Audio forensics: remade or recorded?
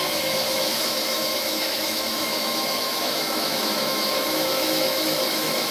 remade